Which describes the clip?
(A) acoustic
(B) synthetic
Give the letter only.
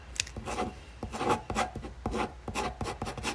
A